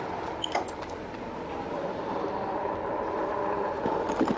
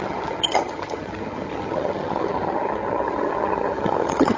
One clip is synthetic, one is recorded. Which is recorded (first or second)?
first